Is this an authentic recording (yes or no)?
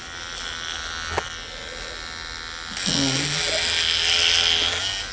yes